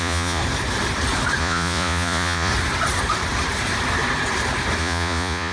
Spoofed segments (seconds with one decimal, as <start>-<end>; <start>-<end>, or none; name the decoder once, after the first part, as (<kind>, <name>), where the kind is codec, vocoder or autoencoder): 0.0-0.4 (vocoder, Vocos); 1.4-2.5; 4.8-5.5